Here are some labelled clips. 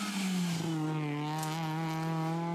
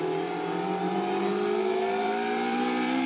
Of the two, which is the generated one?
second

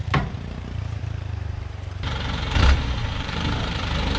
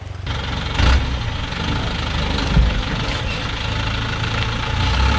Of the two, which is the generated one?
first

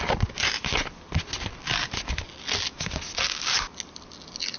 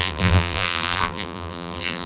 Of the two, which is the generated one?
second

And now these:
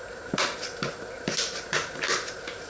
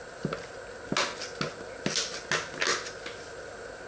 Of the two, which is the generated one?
first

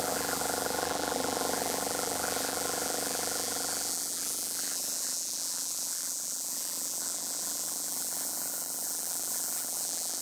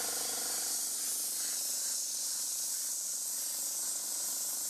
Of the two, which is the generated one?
first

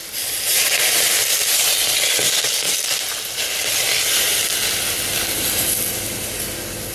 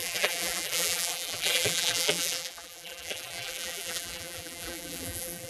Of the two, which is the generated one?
second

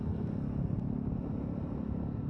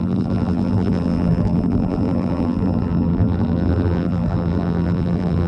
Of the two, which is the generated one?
second